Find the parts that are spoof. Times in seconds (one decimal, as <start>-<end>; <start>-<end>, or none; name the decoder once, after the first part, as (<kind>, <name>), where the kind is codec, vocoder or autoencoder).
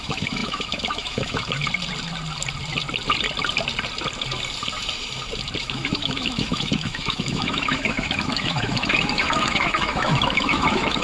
0.0-1.6 (autoencoder, DAC-VAE); 5.6-11.0